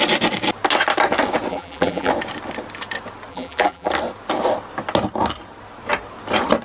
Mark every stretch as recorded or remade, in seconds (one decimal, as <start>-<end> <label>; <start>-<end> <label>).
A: 0.0-1.5 recorded; 1.5-2.1 remade; 2.1-3.3 recorded; 3.3-3.9 remade; 3.9-6.6 recorded